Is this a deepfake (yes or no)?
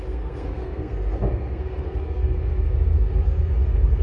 yes